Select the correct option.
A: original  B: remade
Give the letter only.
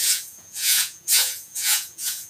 B